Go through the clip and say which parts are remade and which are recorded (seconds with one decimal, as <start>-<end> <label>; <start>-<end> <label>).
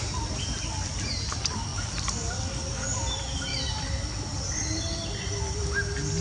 0.0-1.7 recorded; 1.7-2.5 remade; 2.5-6.2 recorded